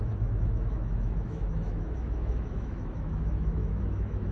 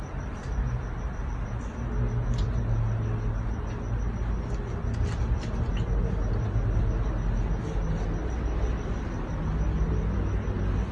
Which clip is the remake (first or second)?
first